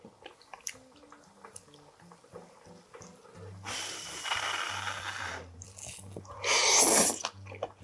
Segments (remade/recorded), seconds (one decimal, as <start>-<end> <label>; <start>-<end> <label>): 0.0-7.8 recorded